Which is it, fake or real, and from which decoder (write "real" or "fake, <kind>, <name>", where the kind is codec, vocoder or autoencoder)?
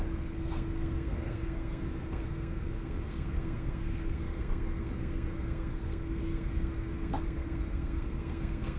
fake, codec, SNAC